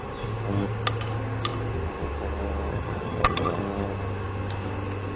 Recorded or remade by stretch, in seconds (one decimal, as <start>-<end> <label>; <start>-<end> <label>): 0.0-2.7 recorded; 2.7-3.6 remade; 3.6-5.2 recorded